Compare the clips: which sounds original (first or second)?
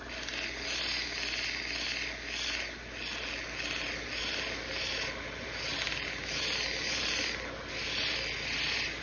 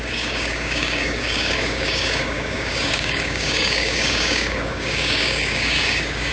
first